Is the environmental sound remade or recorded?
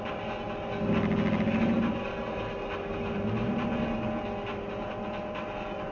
recorded